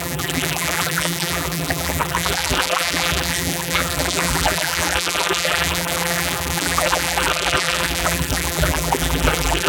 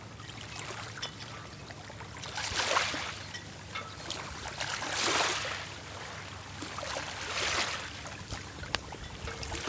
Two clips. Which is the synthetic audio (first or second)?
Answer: first